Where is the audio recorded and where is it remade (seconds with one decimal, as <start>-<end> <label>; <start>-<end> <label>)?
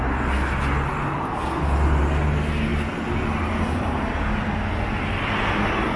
0.0-6.0 recorded